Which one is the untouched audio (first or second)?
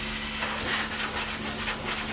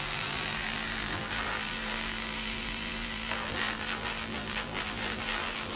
first